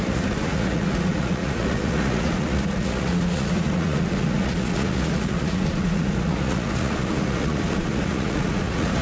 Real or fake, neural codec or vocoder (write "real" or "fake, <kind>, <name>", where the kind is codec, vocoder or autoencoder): fake, vocoder, Vocos